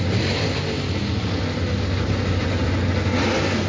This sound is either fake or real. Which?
real